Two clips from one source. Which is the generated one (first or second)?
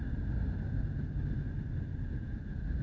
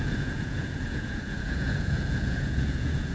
second